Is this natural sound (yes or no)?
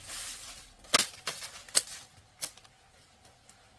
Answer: yes